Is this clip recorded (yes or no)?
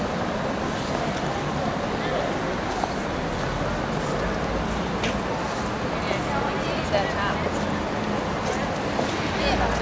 yes